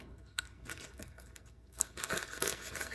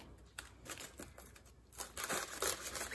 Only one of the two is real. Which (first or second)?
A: second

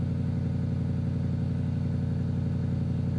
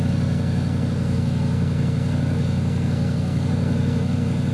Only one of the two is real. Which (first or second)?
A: first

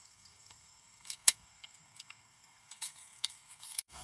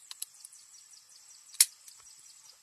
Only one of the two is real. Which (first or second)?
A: second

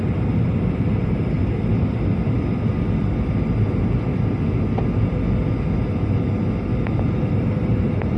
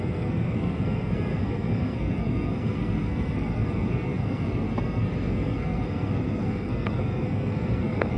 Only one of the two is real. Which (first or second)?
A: first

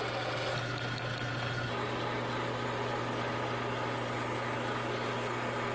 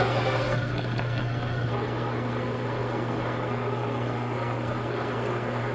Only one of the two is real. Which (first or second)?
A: first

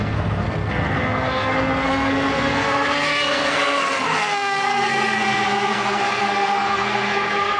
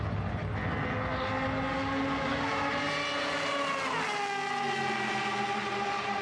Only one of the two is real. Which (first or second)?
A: second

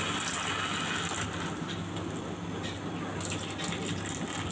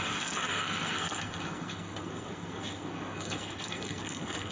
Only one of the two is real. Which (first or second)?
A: first